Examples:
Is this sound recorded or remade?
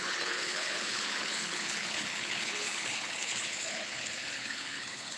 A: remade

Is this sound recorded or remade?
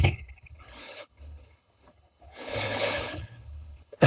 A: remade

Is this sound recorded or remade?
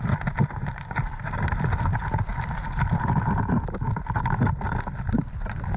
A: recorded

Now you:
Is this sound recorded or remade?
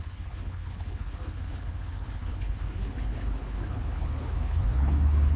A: remade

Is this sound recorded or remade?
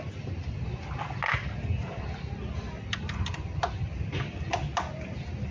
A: recorded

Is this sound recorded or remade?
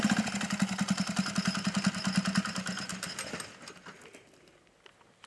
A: recorded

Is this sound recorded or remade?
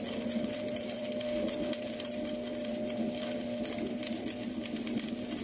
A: recorded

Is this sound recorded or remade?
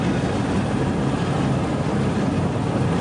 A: recorded